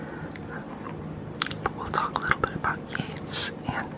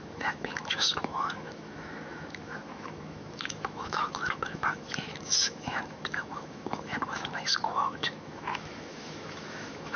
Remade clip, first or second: second